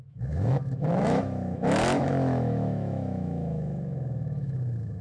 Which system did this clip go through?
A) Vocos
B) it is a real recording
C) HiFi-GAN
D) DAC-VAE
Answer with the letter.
D